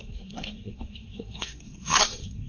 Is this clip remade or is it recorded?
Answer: remade